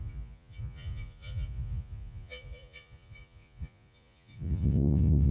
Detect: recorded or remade remade